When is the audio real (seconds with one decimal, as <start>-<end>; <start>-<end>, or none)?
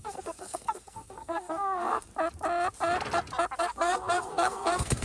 2.1-3.6